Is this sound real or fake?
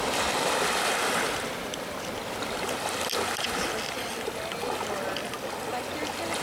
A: real